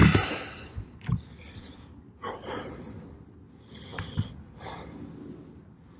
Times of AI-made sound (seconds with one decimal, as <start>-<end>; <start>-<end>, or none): none